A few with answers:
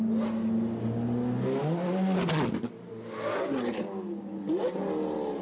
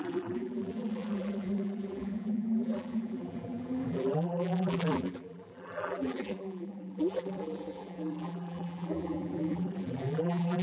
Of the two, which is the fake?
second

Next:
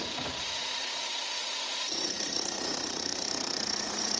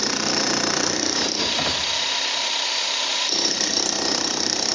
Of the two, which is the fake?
first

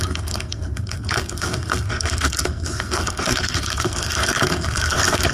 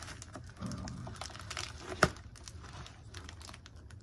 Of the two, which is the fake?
first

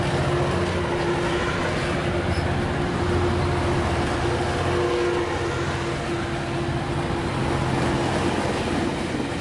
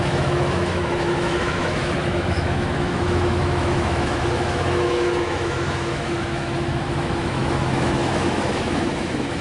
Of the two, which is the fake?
second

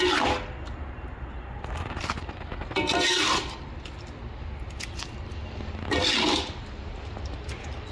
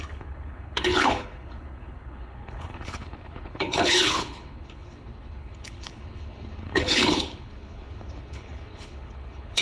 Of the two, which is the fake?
second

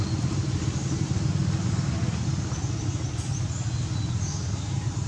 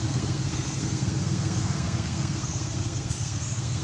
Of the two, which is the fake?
second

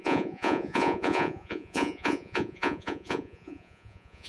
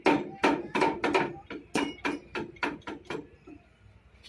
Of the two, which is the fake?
first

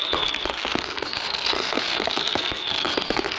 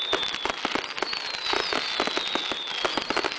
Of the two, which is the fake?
first